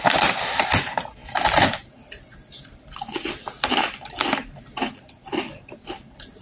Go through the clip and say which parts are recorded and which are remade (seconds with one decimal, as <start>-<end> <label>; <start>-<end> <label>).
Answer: 0.0-6.4 recorded

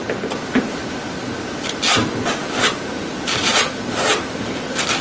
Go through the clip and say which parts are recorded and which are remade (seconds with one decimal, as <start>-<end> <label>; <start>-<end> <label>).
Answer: 0.0-5.0 recorded

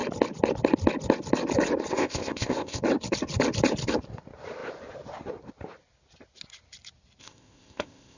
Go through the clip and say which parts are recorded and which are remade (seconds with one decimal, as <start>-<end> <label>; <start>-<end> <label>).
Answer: 0.0-1.9 recorded; 1.9-2.8 remade; 2.8-7.2 recorded; 7.2-8.2 remade

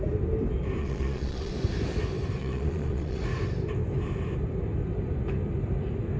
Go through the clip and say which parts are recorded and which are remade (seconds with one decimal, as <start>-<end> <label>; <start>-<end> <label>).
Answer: 0.0-0.8 recorded; 0.8-1.5 remade; 1.5-2.4 recorded; 2.4-3.2 remade; 3.2-6.2 recorded

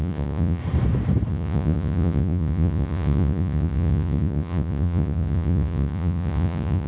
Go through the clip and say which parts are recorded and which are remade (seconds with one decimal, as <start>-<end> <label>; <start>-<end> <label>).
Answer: 0.0-0.6 remade; 0.6-1.3 recorded; 1.3-6.9 remade